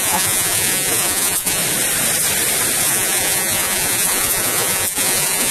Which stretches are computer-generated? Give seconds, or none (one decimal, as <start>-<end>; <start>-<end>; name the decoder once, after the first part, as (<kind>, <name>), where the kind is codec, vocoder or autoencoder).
0.0-1.6 (vocoder, Vocos); 2.8-5.5